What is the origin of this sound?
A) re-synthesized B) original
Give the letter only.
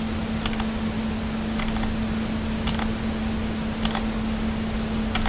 B